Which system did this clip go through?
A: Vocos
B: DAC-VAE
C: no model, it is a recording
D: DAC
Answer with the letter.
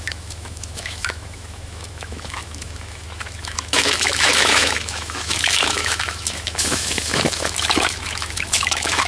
B